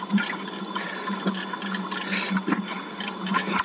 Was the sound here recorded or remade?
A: recorded